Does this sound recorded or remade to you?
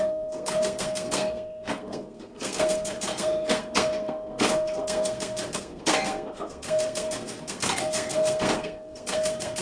remade